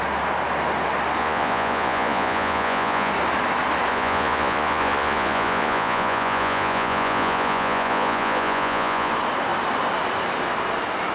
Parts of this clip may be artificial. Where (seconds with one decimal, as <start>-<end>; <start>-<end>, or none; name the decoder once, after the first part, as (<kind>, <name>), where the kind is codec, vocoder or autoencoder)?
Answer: 1.2-3.1 (vocoder, Vocos); 3.9-9.1